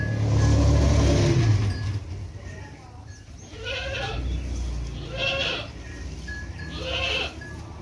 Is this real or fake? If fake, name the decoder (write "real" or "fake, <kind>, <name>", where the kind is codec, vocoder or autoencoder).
real